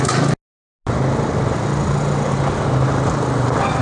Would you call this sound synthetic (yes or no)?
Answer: no